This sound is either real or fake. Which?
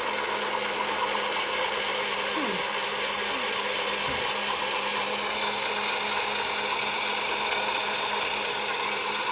real